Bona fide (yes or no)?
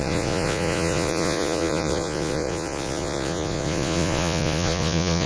no